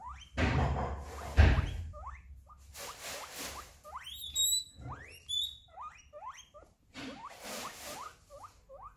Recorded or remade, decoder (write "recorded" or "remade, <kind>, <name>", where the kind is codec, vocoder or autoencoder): recorded